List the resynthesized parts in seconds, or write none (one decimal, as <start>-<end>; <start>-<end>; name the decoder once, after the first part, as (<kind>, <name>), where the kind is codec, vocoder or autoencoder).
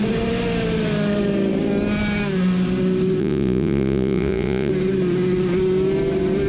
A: 3.2-4.7 (vocoder, Vocos)